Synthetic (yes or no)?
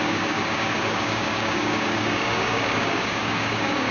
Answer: yes